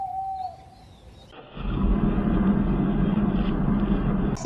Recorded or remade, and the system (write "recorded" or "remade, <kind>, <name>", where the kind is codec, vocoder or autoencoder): recorded